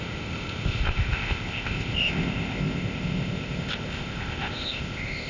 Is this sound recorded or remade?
remade